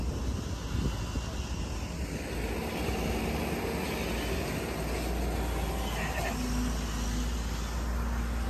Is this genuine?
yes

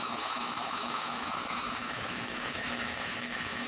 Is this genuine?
no